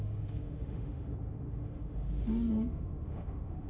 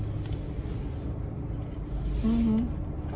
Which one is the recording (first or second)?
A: second